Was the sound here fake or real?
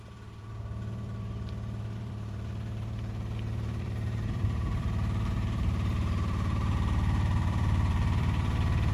fake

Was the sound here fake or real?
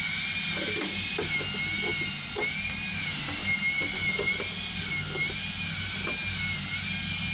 real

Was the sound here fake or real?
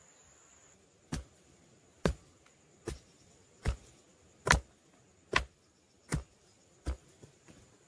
real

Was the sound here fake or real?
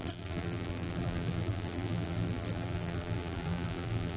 fake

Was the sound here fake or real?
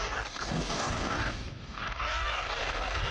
fake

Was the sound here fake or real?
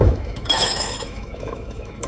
fake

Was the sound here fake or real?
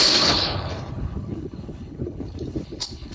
fake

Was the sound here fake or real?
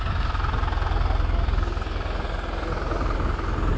real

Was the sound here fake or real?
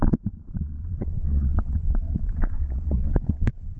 fake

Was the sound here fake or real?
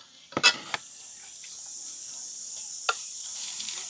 real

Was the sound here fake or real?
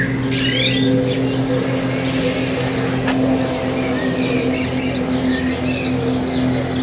real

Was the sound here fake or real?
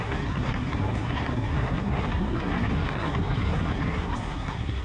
fake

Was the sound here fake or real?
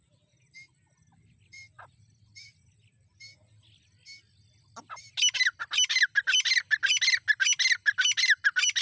real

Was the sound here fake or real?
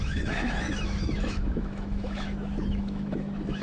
fake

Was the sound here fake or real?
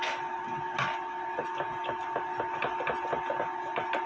real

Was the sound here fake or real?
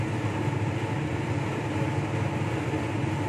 real